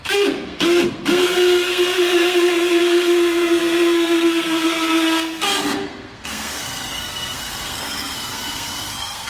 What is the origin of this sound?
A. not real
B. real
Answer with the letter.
A